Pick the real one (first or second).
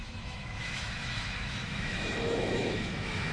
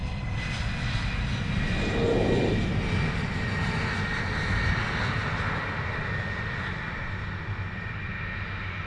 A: second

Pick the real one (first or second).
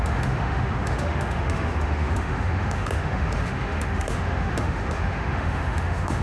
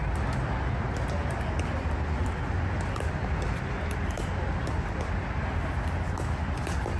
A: second